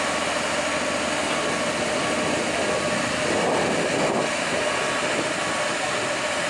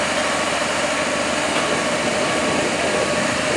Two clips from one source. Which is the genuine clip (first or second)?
first